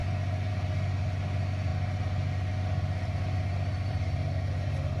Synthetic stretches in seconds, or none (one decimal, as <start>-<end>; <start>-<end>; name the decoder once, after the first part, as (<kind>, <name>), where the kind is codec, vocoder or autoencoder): none